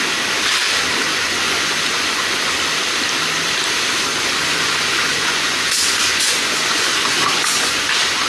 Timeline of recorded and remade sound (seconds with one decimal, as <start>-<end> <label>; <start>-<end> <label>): 0.0-1.1 recorded; 1.1-2.5 remade; 2.5-4.1 recorded; 4.1-7.9 remade; 7.9-8.3 recorded